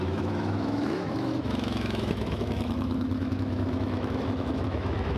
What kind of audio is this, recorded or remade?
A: remade